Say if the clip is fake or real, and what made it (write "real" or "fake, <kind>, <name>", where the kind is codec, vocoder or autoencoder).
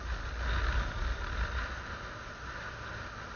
real